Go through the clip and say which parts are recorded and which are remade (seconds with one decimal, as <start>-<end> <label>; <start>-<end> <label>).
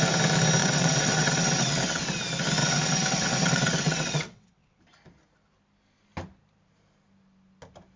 0.0-0.6 recorded; 0.6-2.0 remade; 2.0-2.6 recorded; 2.6-4.8 remade; 4.8-8.0 recorded